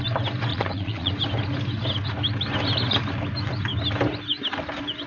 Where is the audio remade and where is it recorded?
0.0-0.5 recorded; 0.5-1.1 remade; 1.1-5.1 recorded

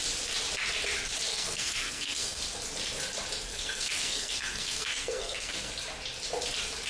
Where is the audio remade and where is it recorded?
0.0-1.3 recorded; 1.3-2.4 remade; 2.4-3.5 recorded; 3.5-5.7 remade; 5.7-6.9 recorded

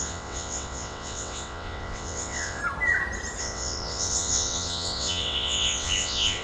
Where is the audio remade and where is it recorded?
0.0-2.6 remade; 2.6-3.4 recorded; 3.4-6.4 remade

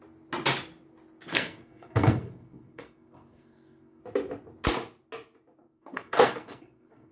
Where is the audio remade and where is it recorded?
0.0-1.3 recorded; 1.3-4.0 remade; 4.0-5.6 recorded; 5.6-7.1 remade